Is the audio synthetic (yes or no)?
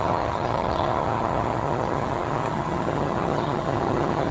yes